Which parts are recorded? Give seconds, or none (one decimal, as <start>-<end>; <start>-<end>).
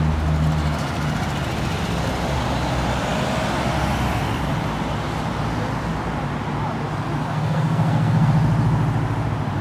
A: 0.0-7.3; 8.3-9.6